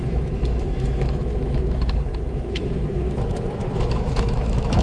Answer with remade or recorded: remade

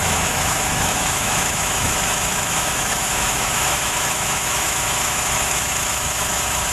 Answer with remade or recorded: remade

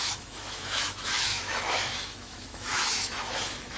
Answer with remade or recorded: remade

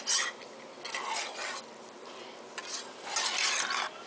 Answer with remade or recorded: recorded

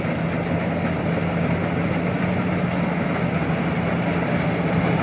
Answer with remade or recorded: recorded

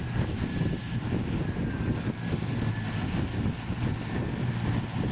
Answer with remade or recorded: recorded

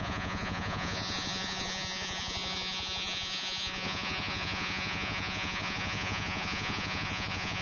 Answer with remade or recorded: remade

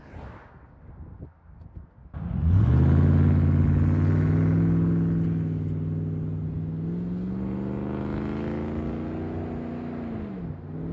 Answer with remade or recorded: recorded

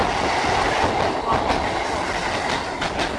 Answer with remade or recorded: recorded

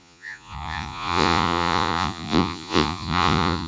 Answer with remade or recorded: remade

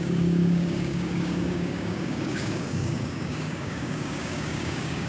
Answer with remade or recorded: remade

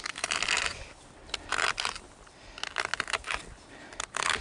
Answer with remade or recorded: recorded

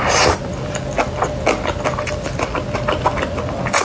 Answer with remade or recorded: recorded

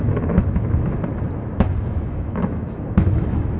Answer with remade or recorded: remade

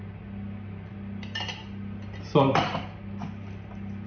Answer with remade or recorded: recorded